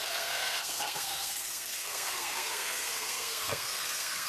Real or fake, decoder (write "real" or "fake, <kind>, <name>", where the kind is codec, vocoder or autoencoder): fake, codec, SNAC